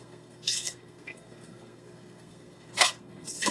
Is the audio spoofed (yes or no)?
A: yes